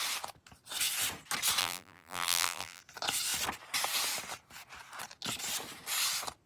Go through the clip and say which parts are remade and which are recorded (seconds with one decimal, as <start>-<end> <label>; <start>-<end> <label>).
0.0-1.6 recorded; 1.6-2.8 remade; 2.8-6.5 recorded